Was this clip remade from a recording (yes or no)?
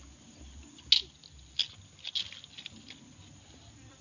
no